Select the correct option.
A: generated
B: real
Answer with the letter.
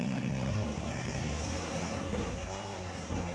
A